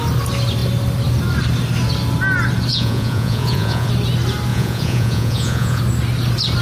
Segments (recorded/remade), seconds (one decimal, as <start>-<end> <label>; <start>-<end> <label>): 0.0-2.7 recorded; 2.7-3.9 remade; 3.9-4.5 recorded; 4.5-5.8 remade; 5.8-6.6 recorded